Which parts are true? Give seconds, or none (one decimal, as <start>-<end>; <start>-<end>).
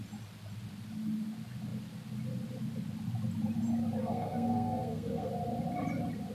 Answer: 0.0-4.0; 5.3-6.3